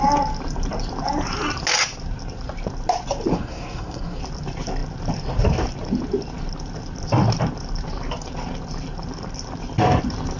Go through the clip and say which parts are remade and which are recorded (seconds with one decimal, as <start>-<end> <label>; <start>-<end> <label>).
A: 0.0-3.3 recorded; 3.3-4.2 remade; 4.2-10.4 recorded